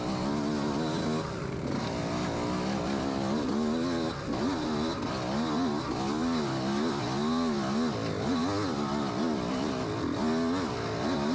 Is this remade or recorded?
recorded